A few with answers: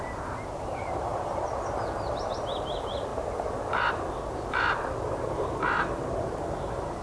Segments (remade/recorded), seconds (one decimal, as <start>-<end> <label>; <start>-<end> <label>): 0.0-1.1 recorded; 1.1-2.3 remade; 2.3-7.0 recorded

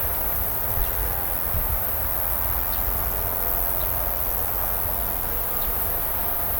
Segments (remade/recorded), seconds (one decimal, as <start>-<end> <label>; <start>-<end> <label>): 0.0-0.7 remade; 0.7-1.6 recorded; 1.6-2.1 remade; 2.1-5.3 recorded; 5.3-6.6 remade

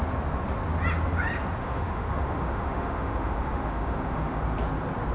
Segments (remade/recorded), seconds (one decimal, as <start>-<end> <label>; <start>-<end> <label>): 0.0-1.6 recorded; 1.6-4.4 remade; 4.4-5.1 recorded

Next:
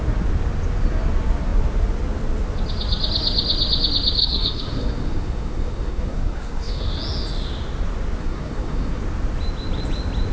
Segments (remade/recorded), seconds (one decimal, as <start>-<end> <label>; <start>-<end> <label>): 0.0-4.2 recorded; 4.2-6.9 remade; 6.9-8.2 recorded; 8.2-9.0 remade; 9.0-10.3 recorded

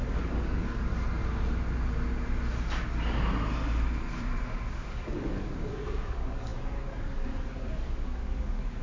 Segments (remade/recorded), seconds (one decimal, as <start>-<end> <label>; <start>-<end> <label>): 0.0-0.9 remade; 0.9-4.7 recorded; 4.7-8.8 remade

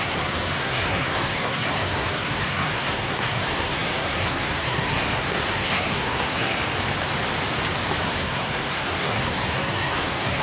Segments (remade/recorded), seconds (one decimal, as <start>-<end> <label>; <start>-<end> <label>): 0.0-6.6 remade; 6.6-8.0 recorded; 8.0-10.4 remade

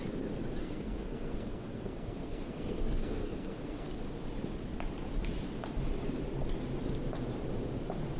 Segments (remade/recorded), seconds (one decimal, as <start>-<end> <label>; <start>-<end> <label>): 0.0-0.6 recorded; 0.6-4.0 remade; 4.0-8.2 recorded

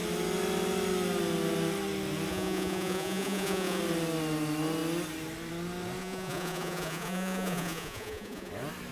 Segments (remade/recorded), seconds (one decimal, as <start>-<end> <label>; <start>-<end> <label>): 0.0-2.3 recorded; 2.3-3.8 remade; 3.8-6.0 recorded; 6.0-8.5 remade; 8.5-8.9 recorded